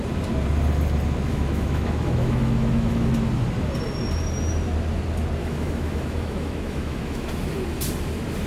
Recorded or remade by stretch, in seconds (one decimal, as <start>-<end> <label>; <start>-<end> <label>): 0.0-1.3 recorded; 1.3-3.1 remade; 3.1-5.4 recorded; 5.4-7.3 remade; 7.3-8.5 recorded